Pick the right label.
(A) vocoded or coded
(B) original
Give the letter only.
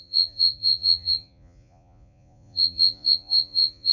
A